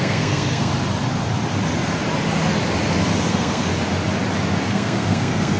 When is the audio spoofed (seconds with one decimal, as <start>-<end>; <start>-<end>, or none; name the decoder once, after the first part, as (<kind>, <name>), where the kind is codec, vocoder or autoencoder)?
0.0-0.7 (codec, SNAC); 3.3-3.7; 4.7-5.6